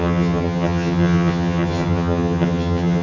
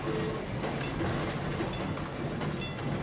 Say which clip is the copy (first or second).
first